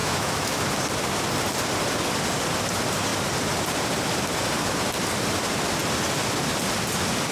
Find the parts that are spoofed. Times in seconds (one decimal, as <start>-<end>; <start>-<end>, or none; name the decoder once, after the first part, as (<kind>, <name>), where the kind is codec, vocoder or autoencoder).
0.0-0.6 (autoencoder, DAC-VAE)